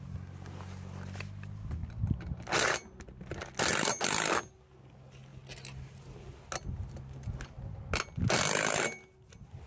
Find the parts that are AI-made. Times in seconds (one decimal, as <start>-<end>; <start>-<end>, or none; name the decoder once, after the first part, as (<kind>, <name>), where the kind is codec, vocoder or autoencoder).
none